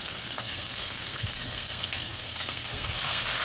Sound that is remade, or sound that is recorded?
remade